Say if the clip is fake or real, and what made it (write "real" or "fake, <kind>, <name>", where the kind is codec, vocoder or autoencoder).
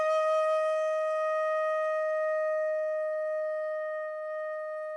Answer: real